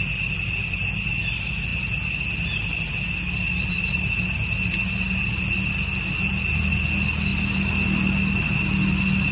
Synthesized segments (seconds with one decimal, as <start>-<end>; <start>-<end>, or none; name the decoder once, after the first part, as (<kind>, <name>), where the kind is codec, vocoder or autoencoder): none